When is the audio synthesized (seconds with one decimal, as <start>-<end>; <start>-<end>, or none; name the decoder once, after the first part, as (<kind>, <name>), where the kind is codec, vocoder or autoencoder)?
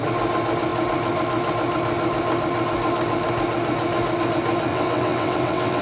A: 4.7-5.8 (vocoder, WaveNeXt)